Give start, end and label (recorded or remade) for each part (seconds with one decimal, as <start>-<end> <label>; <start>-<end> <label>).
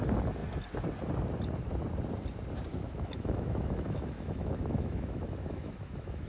0.0-2.7 recorded; 2.7-6.3 remade